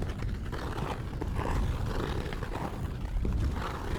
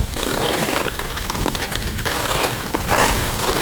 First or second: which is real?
first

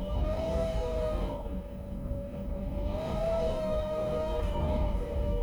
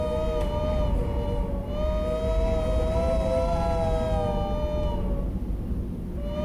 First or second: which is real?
second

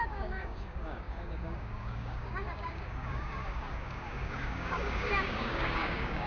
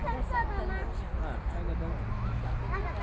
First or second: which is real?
second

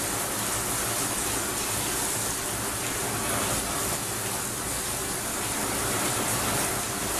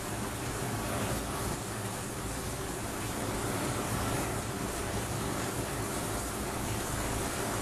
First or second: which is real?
first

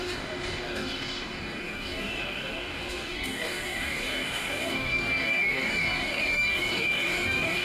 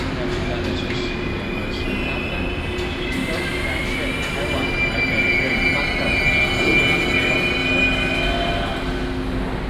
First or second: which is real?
second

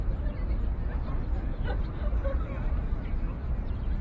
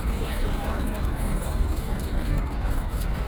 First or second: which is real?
first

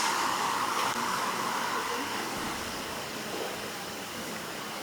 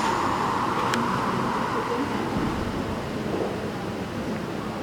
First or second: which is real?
second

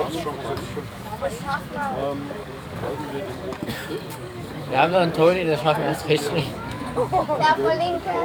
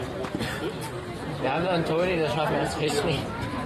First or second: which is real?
second